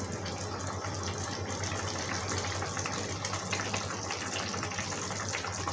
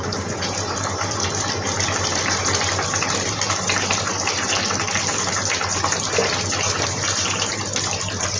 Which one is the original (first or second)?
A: first